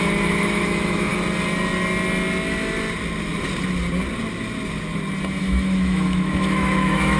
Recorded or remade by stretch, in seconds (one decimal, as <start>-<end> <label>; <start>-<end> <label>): 0.0-1.1 remade; 1.1-5.4 recorded; 5.4-7.2 remade